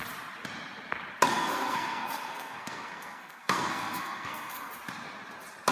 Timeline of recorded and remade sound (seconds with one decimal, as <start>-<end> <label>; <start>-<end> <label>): 0.0-1.3 recorded; 1.3-4.7 remade; 4.7-5.7 recorded